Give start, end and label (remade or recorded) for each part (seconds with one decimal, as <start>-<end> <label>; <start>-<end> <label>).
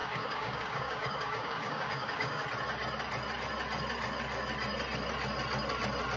0.0-2.4 remade; 2.4-6.2 recorded